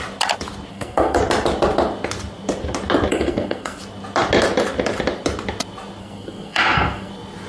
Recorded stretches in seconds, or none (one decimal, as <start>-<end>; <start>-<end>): 0.0-0.7; 1.2-3.1; 3.8-6.0; 7.1-7.5